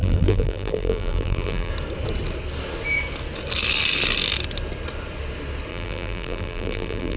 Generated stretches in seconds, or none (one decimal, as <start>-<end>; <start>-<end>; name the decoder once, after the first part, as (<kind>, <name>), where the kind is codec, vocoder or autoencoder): 0.0-1.7 (vocoder, BigVGAN v2); 5.7-7.2